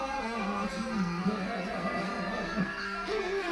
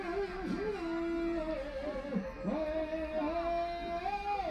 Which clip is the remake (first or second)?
first